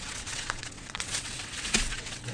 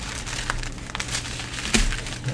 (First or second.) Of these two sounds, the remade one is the first